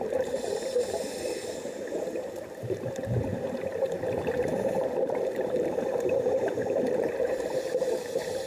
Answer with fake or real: fake